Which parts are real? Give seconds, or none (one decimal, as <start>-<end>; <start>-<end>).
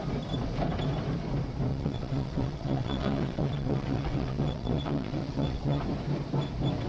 0.0-1.7; 5.8-6.9